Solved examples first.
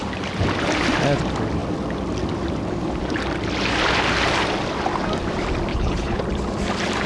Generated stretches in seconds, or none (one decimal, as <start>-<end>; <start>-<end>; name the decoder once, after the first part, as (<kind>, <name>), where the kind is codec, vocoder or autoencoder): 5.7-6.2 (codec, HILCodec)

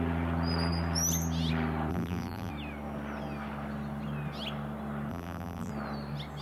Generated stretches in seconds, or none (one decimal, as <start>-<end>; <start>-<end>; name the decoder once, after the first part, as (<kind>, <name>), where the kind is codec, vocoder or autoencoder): 1.9-2.5 (vocoder, BigVGAN v2); 5.1-5.7

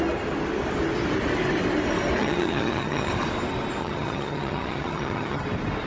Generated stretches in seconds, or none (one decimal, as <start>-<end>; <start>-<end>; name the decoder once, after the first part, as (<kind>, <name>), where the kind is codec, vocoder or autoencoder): 2.2-3.1 (vocoder, HiFi-GAN); 3.8-5.4

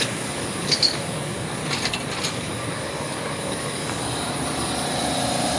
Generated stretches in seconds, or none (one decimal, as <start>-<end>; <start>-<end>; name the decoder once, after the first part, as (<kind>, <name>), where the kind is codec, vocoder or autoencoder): 0.0-1.6 (codec, DAC); 2.3-4.0